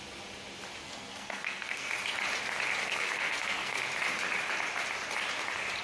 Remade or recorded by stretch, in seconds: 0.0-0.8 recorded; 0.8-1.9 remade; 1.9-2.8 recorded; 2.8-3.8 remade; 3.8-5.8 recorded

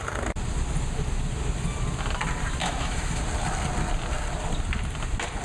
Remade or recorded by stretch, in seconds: 0.0-2.6 recorded; 2.6-3.2 remade; 3.2-5.4 recorded

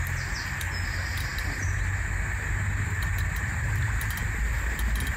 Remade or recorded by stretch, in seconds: 0.0-5.2 recorded

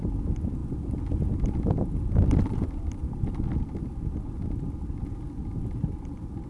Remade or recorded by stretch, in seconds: 0.0-6.5 recorded